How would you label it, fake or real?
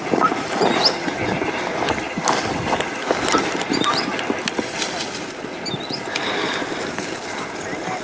real